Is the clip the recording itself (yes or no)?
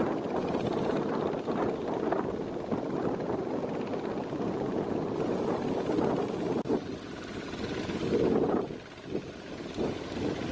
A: yes